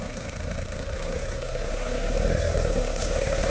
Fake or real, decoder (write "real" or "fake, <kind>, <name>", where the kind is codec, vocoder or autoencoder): fake, codec, SNAC